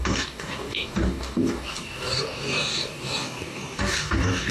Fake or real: fake